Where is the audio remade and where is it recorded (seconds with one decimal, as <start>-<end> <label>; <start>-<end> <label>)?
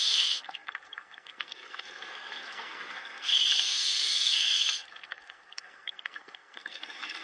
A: 0.0-7.2 remade